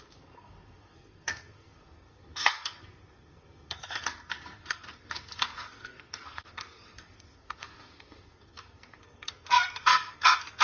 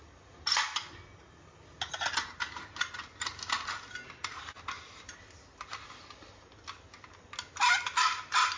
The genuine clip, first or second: second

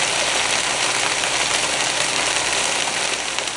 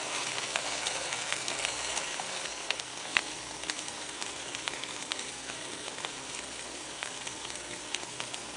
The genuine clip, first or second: first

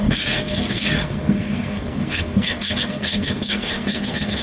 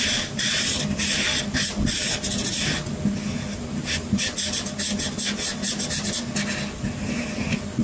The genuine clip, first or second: second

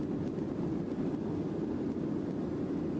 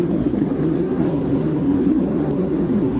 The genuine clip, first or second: first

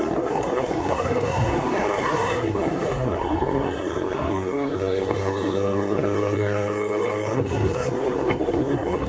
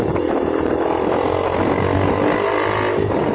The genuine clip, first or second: second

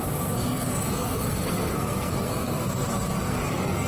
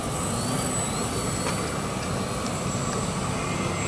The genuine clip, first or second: second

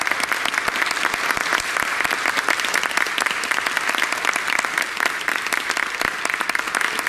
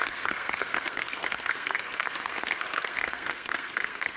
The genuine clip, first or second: first